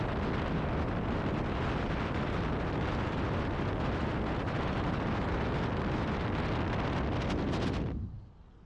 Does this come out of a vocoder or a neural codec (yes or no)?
no